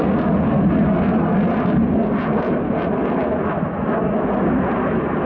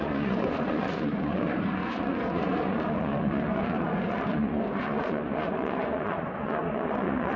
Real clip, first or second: first